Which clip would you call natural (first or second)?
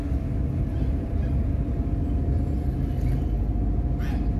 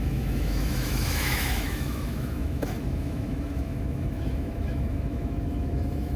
first